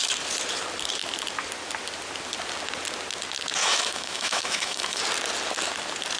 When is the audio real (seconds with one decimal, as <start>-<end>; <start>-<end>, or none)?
0.0-3.6; 5.0-6.2